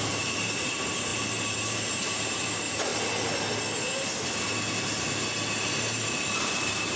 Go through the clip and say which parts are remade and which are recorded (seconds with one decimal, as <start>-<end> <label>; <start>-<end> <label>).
0.0-2.9 remade; 2.9-5.6 recorded; 5.6-7.0 remade